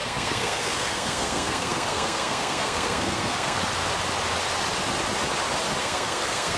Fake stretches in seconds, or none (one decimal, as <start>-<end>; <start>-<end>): 0.0-3.6; 5.8-6.6